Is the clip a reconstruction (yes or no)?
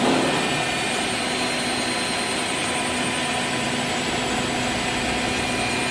no